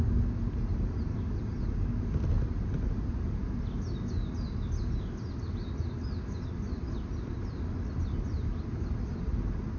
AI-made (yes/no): no